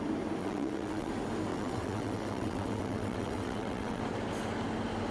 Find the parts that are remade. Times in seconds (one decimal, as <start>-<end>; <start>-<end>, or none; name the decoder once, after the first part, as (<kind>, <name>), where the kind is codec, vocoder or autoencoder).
0.4-1.1 (vocoder, WaveNeXt); 1.5-4.0